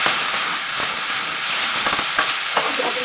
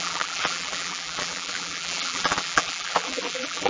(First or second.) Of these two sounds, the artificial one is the second